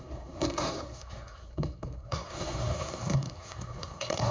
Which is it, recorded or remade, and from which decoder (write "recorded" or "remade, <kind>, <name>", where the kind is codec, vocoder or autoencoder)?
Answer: remade, codec, SNAC